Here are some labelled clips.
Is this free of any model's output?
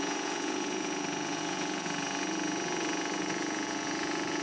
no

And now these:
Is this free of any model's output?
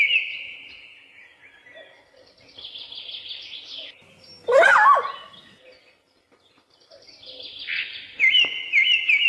yes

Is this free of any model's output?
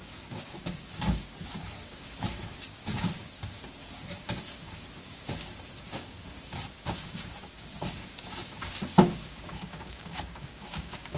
no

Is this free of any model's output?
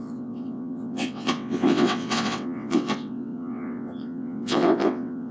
no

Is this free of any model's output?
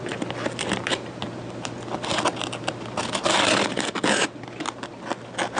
yes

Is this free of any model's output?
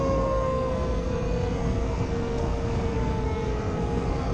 no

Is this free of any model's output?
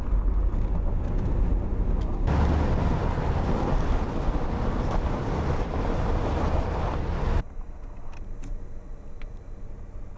yes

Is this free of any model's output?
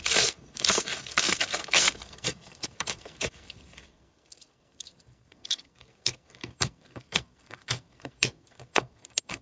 no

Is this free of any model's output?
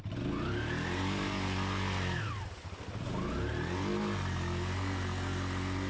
yes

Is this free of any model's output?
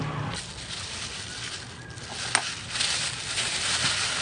yes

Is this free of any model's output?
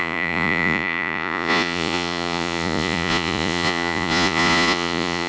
no